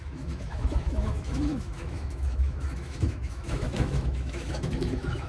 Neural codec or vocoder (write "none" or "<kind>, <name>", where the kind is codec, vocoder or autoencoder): autoencoder, DAC-VAE